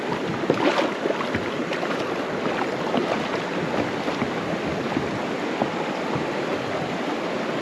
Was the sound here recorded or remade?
recorded